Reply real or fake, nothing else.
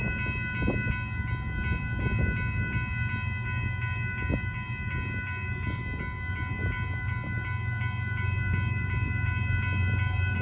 real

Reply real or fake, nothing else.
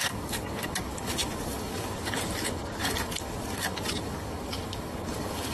fake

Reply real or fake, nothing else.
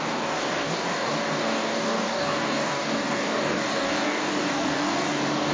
fake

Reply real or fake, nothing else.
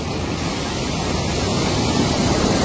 real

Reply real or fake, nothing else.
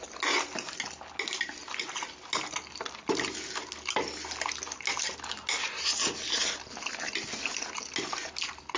real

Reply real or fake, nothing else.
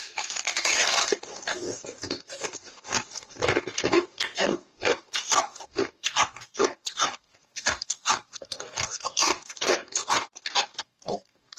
fake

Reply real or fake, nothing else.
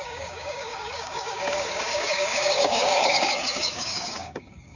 fake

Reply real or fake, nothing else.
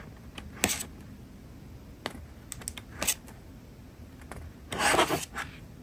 real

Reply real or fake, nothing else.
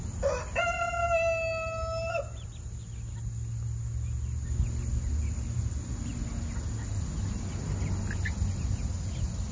real